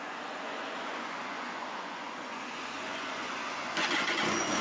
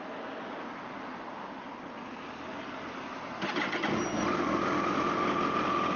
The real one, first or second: second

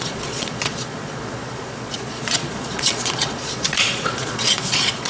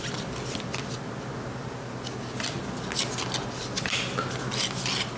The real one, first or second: second